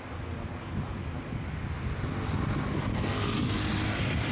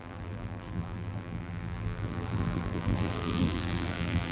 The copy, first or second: second